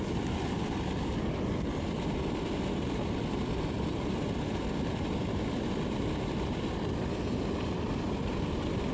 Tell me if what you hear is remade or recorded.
recorded